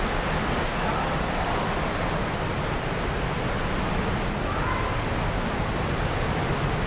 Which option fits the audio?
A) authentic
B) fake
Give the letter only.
A